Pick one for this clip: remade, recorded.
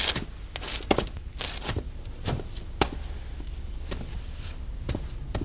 recorded